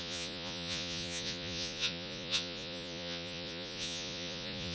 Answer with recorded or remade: remade